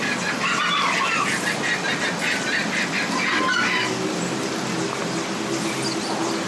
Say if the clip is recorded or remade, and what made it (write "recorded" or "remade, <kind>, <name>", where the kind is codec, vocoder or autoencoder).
recorded